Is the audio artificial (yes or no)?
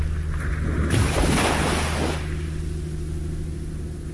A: no